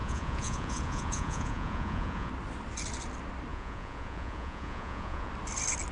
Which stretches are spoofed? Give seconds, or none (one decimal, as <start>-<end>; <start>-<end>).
0.0-2.3; 3.5-5.3